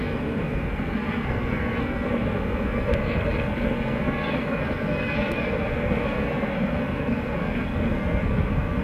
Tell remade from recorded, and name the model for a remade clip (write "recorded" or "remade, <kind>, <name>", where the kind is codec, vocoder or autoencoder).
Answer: remade, codec, SNAC